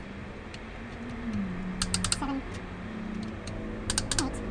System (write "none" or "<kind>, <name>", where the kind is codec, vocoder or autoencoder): none